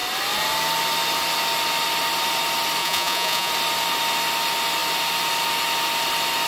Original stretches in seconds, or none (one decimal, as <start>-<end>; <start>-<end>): 0.0-2.8; 3.5-6.5